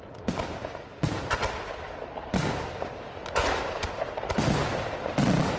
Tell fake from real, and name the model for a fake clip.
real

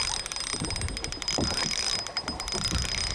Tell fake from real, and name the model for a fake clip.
real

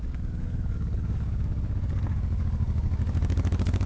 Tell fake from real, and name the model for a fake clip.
fake, codec, DAC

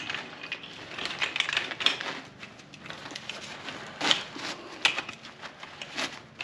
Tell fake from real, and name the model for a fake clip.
real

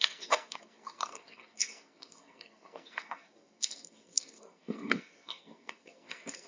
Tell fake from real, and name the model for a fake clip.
fake, codec, SNAC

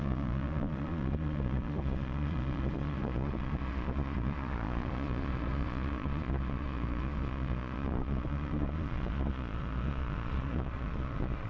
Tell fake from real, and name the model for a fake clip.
fake, vocoder, Vocos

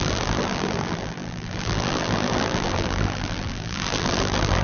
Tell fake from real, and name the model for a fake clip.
fake, vocoder, BigVGAN v2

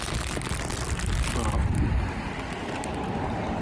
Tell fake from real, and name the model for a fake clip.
real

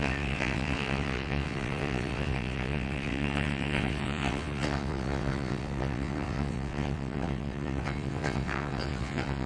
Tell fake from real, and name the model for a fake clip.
fake, vocoder, WaveNeXt